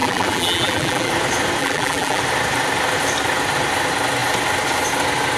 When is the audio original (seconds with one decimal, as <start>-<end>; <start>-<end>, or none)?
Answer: 1.1-1.6; 2.2-5.4